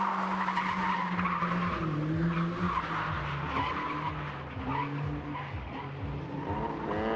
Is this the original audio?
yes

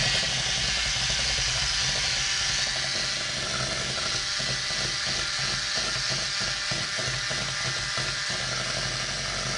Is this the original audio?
yes